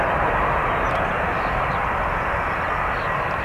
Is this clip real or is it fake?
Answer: real